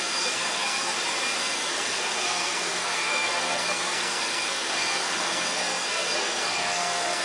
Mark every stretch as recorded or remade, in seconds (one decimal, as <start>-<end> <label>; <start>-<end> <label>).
0.0-0.9 remade; 0.9-1.4 recorded; 1.4-7.2 remade